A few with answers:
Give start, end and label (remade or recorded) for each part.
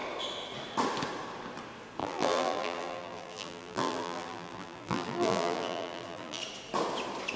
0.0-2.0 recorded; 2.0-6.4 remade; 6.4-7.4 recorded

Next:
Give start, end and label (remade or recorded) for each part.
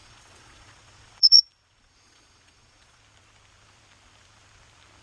0.0-3.0 remade; 3.0-5.0 recorded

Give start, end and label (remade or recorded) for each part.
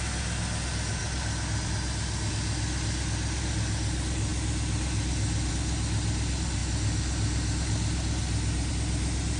0.0-9.4 recorded